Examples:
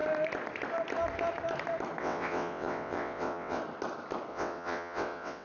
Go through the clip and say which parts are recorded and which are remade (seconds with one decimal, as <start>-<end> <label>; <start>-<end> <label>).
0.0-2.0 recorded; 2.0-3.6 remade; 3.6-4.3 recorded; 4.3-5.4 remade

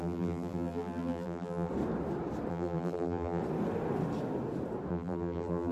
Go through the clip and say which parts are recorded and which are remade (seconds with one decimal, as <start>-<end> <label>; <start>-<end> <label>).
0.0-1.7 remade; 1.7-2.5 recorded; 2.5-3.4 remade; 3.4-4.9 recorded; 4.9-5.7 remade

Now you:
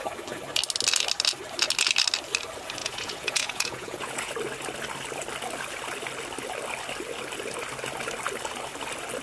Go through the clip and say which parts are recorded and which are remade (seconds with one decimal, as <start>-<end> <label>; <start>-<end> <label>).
0.0-2.8 recorded; 2.8-4.3 remade; 4.3-9.2 recorded

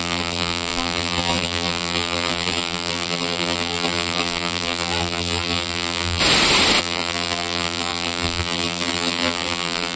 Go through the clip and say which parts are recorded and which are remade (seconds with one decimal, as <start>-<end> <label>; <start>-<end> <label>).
0.0-6.2 remade; 6.2-6.8 recorded; 6.8-10.0 remade

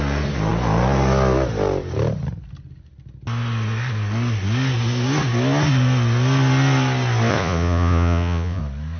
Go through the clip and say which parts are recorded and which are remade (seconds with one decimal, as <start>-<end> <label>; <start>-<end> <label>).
0.0-7.3 recorded; 7.3-8.6 remade; 8.6-9.0 recorded

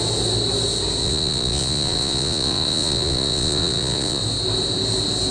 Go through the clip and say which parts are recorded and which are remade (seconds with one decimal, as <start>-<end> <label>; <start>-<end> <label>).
0.0-1.0 recorded; 1.0-4.2 remade; 4.2-5.3 recorded

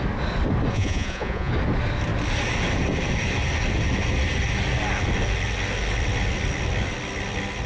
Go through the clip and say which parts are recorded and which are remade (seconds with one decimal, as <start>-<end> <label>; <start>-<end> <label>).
0.0-0.7 recorded; 0.7-1.5 remade; 1.5-7.7 recorded

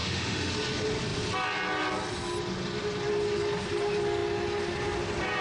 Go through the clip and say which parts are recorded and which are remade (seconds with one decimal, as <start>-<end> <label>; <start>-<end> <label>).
0.0-0.5 remade; 0.5-5.4 recorded